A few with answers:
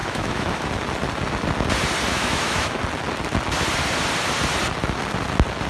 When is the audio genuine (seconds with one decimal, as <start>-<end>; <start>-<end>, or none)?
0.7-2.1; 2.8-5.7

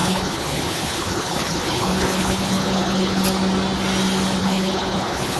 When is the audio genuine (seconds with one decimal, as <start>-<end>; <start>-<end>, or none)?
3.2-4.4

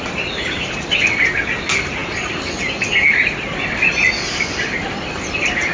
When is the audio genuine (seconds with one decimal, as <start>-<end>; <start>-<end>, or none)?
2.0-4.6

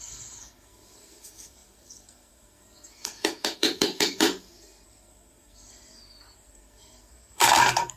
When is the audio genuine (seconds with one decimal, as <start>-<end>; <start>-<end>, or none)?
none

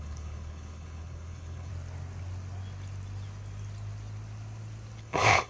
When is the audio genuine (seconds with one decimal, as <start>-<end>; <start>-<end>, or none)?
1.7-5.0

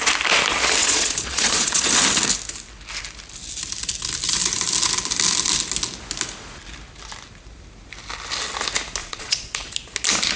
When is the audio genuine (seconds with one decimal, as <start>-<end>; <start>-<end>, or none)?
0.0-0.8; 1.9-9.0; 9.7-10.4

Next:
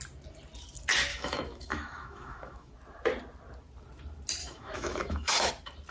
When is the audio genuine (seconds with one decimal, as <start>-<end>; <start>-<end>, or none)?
0.0-1.1; 2.7-4.4; 5.5-5.9